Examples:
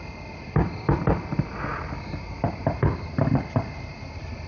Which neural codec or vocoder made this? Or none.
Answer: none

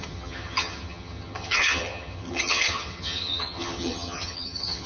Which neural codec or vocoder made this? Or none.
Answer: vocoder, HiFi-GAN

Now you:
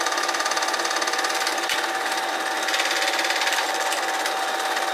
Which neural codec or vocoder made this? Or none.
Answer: none